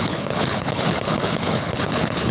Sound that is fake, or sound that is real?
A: fake